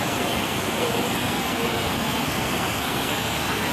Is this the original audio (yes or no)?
no